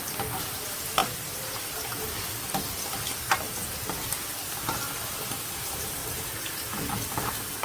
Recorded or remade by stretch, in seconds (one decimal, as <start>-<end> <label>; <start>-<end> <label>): 0.0-6.0 recorded; 6.0-6.5 remade; 6.5-7.6 recorded